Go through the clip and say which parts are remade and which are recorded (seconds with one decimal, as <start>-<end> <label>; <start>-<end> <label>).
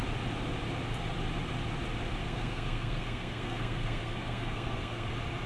0.0-2.2 recorded; 2.2-5.1 remade; 5.1-5.5 recorded